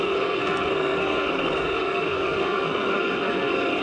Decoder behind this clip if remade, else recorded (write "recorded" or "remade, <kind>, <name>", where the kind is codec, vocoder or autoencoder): remade, codec, SNAC